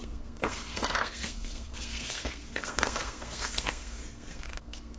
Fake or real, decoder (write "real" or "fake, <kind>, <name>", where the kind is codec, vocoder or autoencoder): fake, codec, SNAC